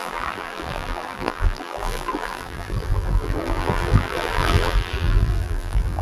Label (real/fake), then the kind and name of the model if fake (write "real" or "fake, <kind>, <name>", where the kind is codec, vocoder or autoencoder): fake, vocoder, BigVGAN v2